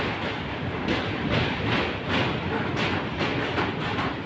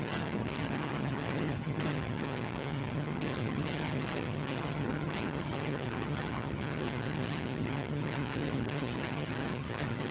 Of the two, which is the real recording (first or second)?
first